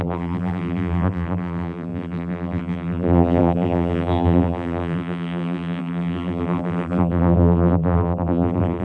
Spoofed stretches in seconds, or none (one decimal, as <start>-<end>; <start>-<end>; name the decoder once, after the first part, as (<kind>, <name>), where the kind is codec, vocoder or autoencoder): 0.0-8.8 (vocoder, BigVGAN v2)